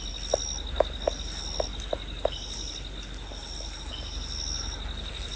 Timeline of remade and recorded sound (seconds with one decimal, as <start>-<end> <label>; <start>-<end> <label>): 0.0-5.4 recorded